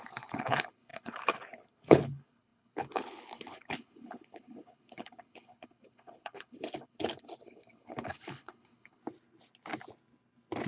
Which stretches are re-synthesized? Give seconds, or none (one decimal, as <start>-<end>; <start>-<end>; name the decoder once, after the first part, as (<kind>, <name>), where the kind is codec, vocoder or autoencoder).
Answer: 0.0-9.0 (codec, HILCodec)

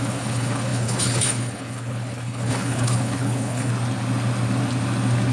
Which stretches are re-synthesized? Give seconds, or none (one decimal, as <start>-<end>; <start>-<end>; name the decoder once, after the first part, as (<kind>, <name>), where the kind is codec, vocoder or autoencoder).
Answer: 0.0-3.7 (codec, HILCodec)

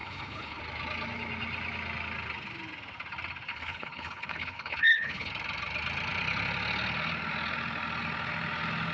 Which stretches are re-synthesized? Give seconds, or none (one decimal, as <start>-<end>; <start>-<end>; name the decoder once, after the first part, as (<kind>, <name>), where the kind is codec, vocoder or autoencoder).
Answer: 0.0-0.6 (codec, HILCodec); 3.5-5.3

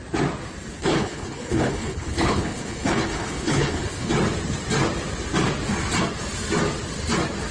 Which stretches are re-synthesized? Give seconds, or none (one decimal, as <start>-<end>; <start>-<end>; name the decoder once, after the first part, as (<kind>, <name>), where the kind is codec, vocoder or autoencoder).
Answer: 0.8-4.1 (codec, HILCodec)

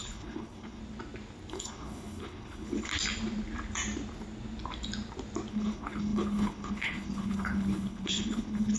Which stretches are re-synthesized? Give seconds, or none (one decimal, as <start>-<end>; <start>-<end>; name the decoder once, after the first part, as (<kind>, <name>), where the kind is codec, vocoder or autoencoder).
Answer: 0.0-0.8 (codec, HILCodec); 1.5-2.9; 5.5-8.8

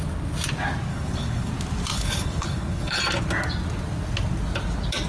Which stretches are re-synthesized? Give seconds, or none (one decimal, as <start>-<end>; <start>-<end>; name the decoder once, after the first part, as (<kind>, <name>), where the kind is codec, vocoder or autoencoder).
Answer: 0.9-1.5 (codec, HILCodec); 1.9-3.0